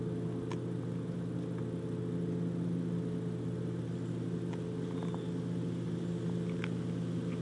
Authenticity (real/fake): real